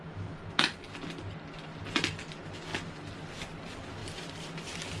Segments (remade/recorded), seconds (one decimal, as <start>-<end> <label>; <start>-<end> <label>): 0.0-4.0 recorded; 4.0-4.5 remade; 4.5-5.0 recorded